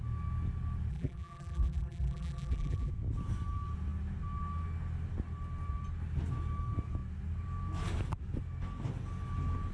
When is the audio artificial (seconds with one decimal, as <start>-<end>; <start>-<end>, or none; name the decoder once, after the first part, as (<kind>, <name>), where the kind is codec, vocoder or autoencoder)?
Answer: 0.9-2.9 (vocoder, BigVGAN v2)